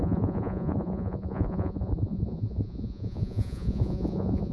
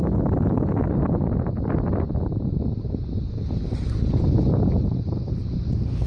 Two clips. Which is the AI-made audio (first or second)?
first